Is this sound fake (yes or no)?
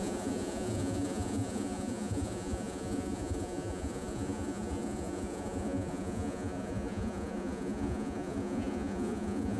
yes